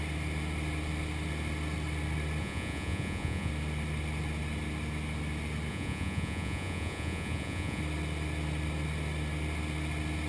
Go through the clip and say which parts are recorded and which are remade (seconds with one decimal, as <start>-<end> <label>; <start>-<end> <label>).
0.0-2.4 recorded; 2.4-3.5 remade; 3.5-5.7 recorded; 5.7-7.8 remade; 7.8-10.3 recorded